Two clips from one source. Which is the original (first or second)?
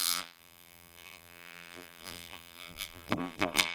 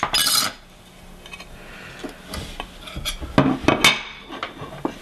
second